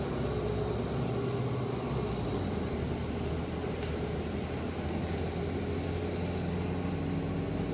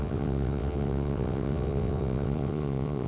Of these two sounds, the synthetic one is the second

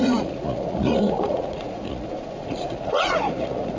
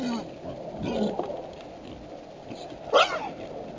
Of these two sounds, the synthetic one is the first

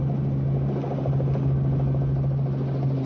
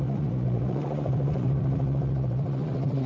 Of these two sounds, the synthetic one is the second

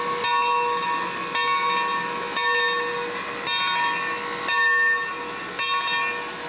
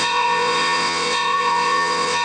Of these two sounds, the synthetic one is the second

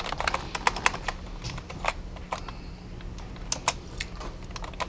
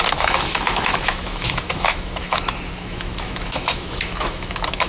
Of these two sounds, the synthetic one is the second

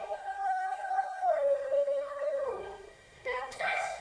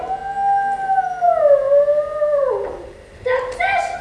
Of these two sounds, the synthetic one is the first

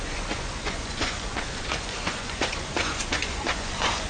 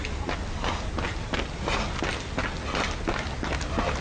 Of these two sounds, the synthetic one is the first